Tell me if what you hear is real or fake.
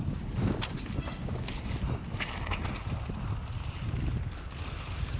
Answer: real